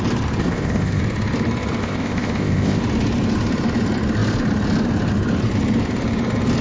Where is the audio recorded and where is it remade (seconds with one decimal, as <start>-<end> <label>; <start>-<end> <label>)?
0.0-0.4 recorded; 0.4-1.0 remade; 1.0-1.8 recorded; 1.8-2.8 remade; 2.8-6.6 recorded